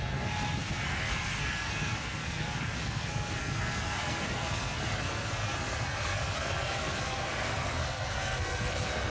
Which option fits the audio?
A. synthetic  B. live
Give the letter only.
A